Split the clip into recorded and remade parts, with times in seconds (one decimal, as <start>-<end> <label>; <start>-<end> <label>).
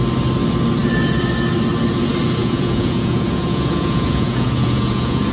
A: 0.0-2.4 recorded; 2.4-5.3 remade